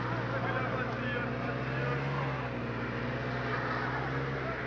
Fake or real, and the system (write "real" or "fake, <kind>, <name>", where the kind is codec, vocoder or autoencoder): real